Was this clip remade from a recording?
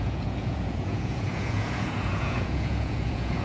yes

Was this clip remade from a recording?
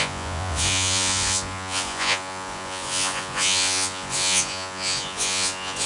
yes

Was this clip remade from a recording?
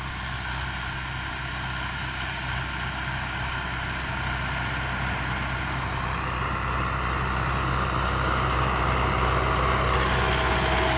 no